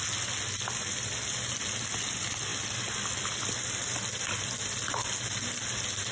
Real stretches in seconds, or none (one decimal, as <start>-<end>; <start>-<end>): 0.0-6.1